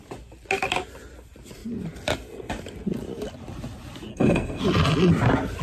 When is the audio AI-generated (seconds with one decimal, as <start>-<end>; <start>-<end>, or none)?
4.1-4.6